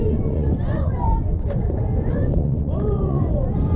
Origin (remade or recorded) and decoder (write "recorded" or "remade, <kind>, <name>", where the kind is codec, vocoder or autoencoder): remade, vocoder, Vocos